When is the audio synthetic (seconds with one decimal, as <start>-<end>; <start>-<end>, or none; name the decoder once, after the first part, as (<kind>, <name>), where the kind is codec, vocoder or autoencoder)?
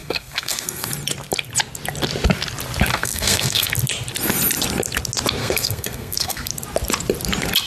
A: 0.0-0.9 (codec, SNAC); 2.9-3.7; 5.4-6.5